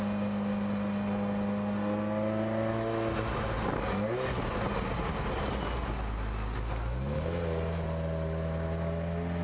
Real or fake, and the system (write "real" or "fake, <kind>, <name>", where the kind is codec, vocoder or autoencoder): real